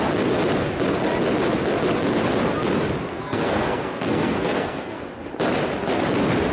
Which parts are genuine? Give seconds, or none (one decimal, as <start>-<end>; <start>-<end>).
0.0-3.1; 5.0-6.5